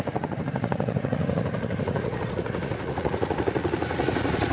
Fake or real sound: fake